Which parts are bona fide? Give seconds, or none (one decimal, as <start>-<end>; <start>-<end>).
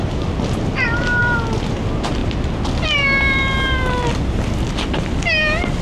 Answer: 0.0-5.8